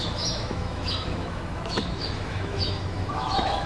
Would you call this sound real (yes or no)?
no